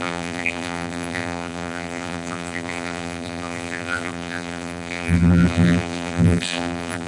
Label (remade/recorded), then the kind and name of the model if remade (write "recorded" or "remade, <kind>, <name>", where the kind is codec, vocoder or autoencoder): remade, vocoder, BigVGAN v2